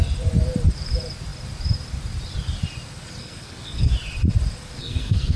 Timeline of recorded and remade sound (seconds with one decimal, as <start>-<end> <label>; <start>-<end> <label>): 0.0-3.2 recorded; 3.2-3.9 remade; 3.9-4.8 recorded; 4.8-5.4 remade